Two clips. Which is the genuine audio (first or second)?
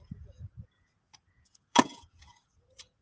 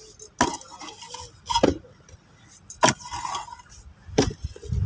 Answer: second